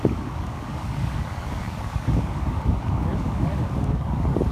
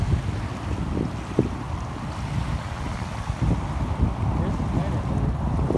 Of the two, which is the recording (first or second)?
second